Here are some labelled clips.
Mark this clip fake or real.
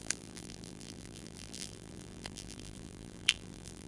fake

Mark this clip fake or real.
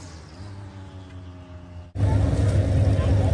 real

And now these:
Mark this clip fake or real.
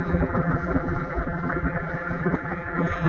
fake